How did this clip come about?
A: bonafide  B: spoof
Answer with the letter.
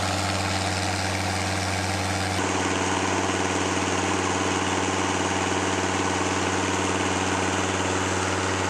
A